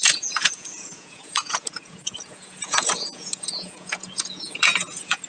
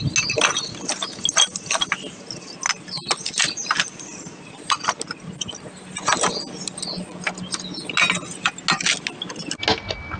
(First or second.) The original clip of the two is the second